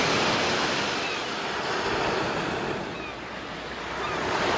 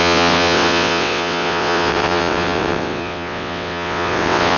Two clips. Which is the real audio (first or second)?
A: first